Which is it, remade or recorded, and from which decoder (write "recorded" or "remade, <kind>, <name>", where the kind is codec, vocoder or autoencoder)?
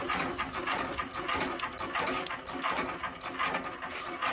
recorded